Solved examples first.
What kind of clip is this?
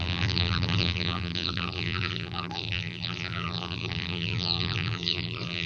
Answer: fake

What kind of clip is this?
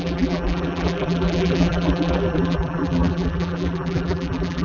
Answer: fake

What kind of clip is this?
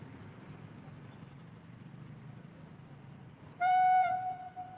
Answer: fake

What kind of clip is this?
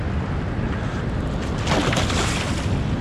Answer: real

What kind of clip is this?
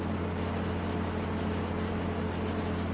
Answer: real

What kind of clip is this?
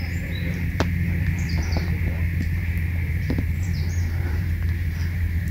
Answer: fake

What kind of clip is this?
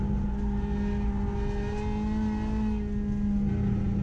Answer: real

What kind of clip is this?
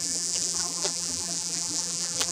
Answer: fake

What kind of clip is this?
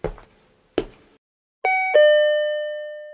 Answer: real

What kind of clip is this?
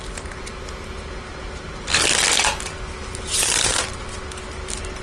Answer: real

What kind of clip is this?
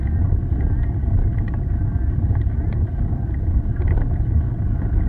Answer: real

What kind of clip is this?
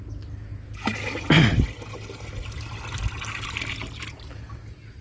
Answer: real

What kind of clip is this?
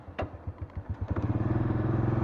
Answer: fake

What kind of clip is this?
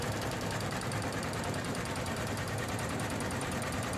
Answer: fake